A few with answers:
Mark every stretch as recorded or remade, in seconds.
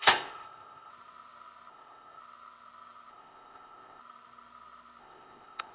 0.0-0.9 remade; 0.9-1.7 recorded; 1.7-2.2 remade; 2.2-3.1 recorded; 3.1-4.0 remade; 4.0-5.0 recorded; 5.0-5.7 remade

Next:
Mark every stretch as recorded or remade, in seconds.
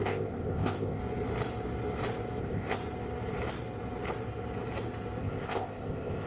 0.0-1.0 remade; 1.0-2.4 recorded; 2.4-2.8 remade; 2.8-5.2 recorded; 5.2-6.3 remade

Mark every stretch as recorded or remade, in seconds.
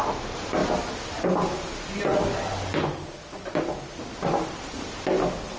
0.0-5.6 recorded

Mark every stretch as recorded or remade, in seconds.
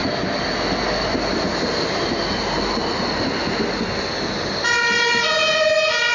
0.0-6.1 recorded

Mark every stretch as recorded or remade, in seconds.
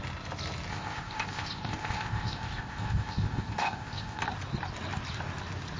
0.0-0.7 recorded; 0.7-4.2 remade; 4.2-5.8 recorded